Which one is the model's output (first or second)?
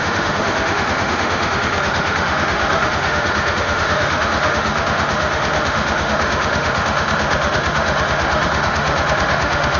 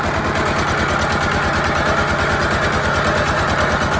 first